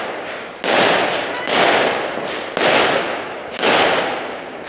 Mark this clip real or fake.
real